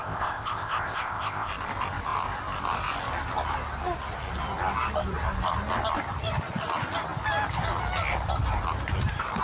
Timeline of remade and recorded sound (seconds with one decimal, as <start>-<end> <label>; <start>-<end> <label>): 0.0-1.5 remade; 1.5-9.4 recorded